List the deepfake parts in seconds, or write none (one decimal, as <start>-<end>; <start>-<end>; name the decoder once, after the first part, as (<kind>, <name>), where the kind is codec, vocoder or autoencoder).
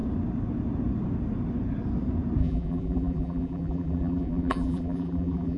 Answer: 2.4-5.6 (vocoder, BigVGAN v2)